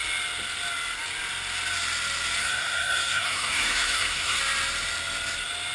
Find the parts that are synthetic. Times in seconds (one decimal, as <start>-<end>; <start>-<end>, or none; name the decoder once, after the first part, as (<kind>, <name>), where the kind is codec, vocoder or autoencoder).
2.4-4.4 (codec, SNAC)